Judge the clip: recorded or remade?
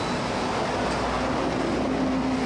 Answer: recorded